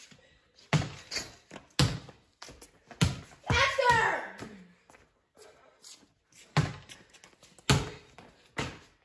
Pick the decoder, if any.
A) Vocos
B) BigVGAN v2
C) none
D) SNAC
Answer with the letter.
C